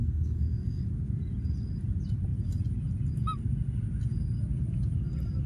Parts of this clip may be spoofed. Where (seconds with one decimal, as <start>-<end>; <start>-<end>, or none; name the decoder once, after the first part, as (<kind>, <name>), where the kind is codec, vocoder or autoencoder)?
0.0-0.8 (codec, SNAC)